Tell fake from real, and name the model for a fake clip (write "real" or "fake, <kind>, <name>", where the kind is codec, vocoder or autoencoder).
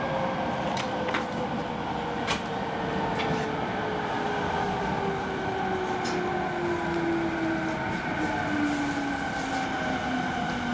real